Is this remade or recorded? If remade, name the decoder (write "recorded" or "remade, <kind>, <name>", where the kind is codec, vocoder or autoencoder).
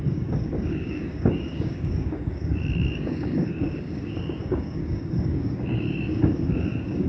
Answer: remade, codec, DAC